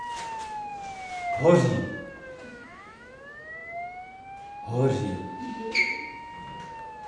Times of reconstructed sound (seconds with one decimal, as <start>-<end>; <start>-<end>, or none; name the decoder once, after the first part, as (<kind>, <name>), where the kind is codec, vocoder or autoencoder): 2.5-3.1 (autoencoder, DAC-VAE)